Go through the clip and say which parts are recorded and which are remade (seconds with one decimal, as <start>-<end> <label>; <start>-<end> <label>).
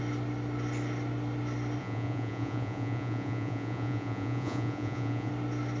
0.0-1.8 recorded; 1.8-5.3 remade; 5.3-5.8 recorded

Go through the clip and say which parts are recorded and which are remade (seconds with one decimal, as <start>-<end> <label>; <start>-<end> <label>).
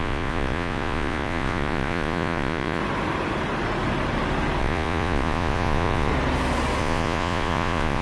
0.0-2.8 remade; 2.8-4.6 recorded; 4.6-6.1 remade; 6.1-6.8 recorded; 6.8-8.0 remade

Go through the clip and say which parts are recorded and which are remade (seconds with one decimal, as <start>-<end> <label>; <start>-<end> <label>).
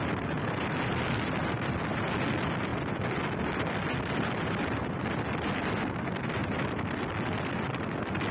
0.0-8.3 recorded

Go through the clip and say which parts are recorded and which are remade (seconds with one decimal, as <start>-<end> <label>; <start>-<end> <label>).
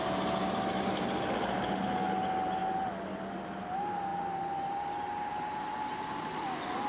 0.0-6.9 recorded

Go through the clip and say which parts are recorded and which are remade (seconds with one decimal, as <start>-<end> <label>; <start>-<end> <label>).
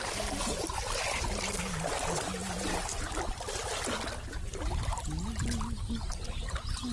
0.0-6.9 recorded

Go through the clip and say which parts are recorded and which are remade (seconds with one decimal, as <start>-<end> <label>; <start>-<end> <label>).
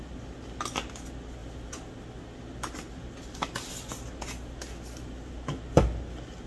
0.0-6.5 recorded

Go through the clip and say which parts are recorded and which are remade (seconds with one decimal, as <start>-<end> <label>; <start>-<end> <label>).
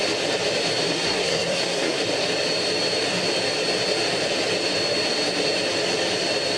0.0-0.9 recorded; 0.9-2.0 remade; 2.0-6.6 recorded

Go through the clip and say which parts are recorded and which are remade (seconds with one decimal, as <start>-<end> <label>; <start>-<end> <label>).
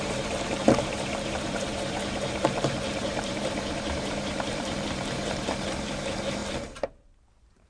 0.0-6.4 remade; 6.4-7.3 recorded; 7.3-7.7 remade